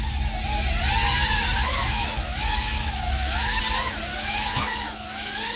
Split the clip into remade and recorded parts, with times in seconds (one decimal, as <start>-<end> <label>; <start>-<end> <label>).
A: 0.0-1.0 recorded; 1.0-3.6 remade; 3.6-4.1 recorded; 4.1-5.6 remade